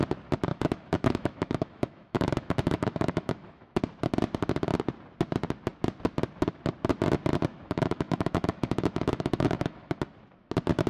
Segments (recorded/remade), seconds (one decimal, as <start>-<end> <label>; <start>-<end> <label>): 0.0-0.5 recorded; 0.5-3.8 remade; 3.8-7.5 recorded; 7.5-10.0 remade; 10.0-10.9 recorded